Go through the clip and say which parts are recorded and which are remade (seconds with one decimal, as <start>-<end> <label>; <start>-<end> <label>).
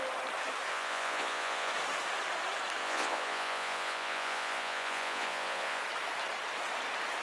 0.0-0.7 recorded; 0.7-1.7 remade; 1.7-2.8 recorded; 2.8-5.8 remade; 5.8-7.2 recorded